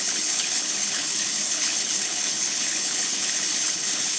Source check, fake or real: fake